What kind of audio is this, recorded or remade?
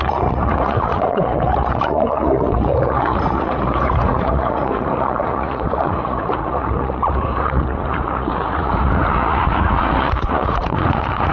remade